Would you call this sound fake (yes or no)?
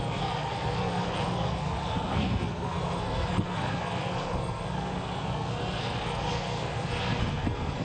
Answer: yes